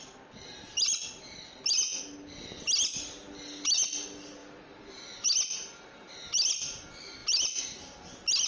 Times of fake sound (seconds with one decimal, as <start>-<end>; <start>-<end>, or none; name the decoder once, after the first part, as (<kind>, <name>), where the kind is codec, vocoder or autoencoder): 7.2-8.1 (vocoder, BigVGAN v2)

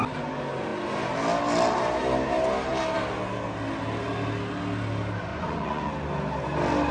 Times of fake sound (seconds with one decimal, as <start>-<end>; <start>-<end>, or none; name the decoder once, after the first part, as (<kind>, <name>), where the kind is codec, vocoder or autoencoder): 5.3-5.9 (vocoder, Vocos)

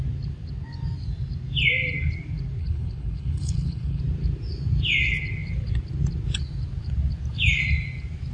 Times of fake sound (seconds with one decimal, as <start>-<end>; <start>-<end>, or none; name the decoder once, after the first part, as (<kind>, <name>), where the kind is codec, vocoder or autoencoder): 2.6-4.0 (codec, HILCodec)

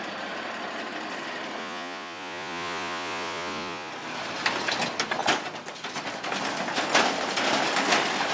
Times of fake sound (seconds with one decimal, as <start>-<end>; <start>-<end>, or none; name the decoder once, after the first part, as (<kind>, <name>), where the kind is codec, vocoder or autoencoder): 1.6-3.9 (vocoder, Vocos)

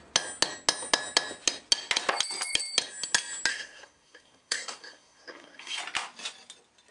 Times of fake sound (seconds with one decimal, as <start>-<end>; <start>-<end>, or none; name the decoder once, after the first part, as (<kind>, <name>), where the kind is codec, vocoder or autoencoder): 3.5-5.8 (codec, SNAC)

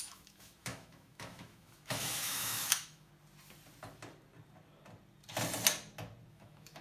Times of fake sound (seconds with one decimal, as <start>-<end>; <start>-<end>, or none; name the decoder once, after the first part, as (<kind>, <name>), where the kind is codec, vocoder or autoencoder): 0.0-3.1 (autoencoder, DAC-VAE); 6.3-6.8

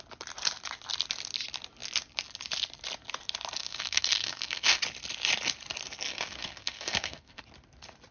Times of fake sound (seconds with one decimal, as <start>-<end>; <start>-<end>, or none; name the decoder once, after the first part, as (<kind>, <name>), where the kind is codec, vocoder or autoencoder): 3.6-4.8 (codec, SNAC); 6.1-7.4